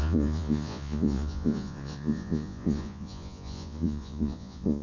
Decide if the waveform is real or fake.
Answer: fake